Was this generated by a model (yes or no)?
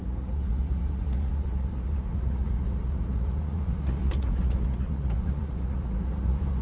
yes